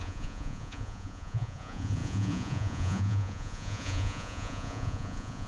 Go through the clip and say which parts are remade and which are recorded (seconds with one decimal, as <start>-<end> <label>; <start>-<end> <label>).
0.0-5.5 remade